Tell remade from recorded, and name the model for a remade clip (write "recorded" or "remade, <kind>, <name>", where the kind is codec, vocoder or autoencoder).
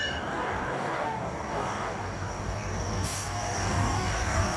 remade, codec, DAC